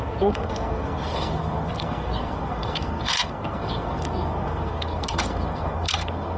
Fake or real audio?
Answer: fake